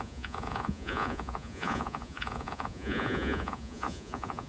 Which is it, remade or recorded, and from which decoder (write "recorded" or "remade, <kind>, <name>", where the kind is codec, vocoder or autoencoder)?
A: remade, vocoder, Vocos